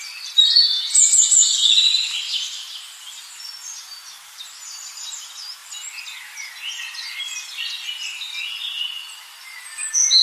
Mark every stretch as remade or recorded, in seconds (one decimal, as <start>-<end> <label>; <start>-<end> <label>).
0.0-10.2 recorded